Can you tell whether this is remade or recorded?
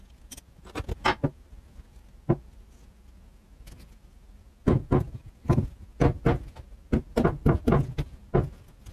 recorded